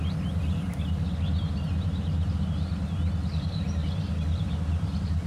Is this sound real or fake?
real